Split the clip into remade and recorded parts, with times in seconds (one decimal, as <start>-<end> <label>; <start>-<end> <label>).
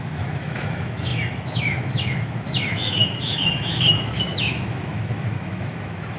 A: 0.0-6.2 remade